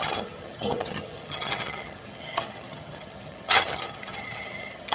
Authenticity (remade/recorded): remade